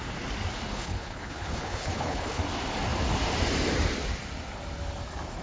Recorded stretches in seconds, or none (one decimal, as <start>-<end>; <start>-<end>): 0.0-0.7; 2.4-5.4